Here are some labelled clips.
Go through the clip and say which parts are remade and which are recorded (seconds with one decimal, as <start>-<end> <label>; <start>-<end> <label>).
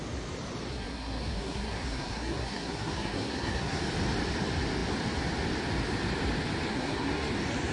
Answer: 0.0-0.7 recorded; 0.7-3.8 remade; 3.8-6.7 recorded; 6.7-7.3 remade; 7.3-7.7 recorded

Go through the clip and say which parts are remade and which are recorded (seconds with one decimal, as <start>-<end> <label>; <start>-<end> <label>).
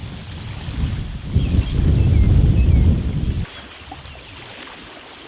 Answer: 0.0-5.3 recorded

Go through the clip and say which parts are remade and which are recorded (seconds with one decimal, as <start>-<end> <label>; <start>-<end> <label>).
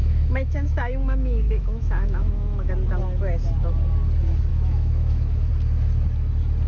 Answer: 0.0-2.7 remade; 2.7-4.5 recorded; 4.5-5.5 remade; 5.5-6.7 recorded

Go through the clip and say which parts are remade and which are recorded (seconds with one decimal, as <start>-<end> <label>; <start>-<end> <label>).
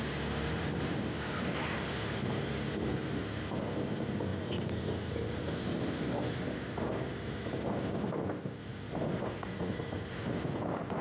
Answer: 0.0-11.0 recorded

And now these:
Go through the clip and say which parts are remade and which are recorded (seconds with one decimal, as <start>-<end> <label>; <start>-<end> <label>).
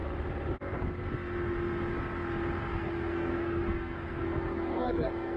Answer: 0.0-2.7 recorded; 2.7-5.4 remade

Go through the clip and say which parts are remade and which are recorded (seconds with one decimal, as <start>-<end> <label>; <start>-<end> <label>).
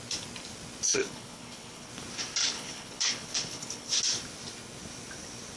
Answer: 0.0-0.9 recorded; 0.9-1.9 remade; 1.9-2.4 recorded; 2.4-4.0 remade; 4.0-5.6 recorded